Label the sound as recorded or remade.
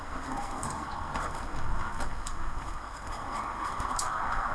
remade